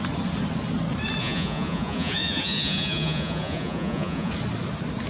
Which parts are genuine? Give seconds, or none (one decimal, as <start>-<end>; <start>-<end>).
0.0-1.2; 4.3-5.1